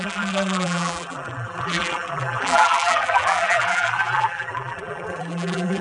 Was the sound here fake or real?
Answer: fake